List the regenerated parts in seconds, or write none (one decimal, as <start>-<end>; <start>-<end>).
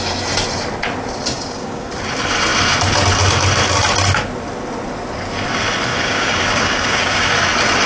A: 1.3-1.9; 5.9-7.3